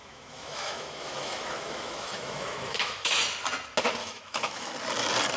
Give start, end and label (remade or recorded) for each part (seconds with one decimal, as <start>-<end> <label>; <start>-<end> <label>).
0.0-3.2 remade; 3.2-4.0 recorded; 4.0-4.7 remade; 4.7-5.4 recorded